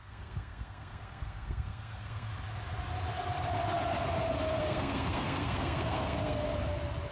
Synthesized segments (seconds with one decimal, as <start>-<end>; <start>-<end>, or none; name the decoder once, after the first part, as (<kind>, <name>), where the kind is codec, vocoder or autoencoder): 0.0-2.3 (codec, SNAC); 4.6-6.4